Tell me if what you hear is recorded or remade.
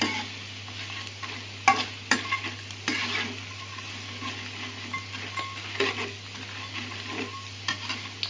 recorded